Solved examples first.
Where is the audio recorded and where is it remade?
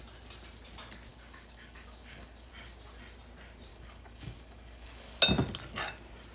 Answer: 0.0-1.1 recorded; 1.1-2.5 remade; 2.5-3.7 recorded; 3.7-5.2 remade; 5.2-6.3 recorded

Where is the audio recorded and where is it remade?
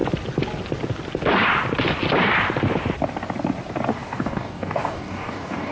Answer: 0.0-3.9 recorded; 3.9-5.7 remade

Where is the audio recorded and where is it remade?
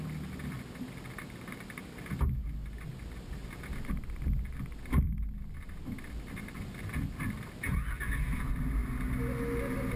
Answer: 0.0-10.0 recorded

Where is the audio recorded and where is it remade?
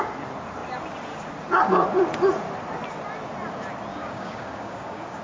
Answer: 0.0-3.9 recorded; 3.9-5.2 remade